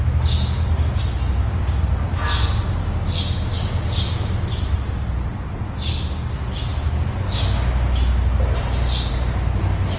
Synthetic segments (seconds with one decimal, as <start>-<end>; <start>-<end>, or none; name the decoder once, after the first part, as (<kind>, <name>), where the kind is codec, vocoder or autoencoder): none